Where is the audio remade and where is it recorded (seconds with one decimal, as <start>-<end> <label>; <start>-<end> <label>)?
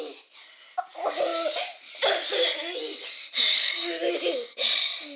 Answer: 0.0-3.5 recorded; 3.5-4.1 remade; 4.1-5.2 recorded